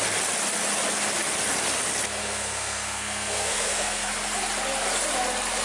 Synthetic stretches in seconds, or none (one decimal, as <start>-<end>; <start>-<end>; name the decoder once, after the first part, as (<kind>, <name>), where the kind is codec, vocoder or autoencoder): 2.2-4.1 (codec, SNAC)